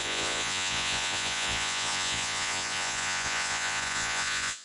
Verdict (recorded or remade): remade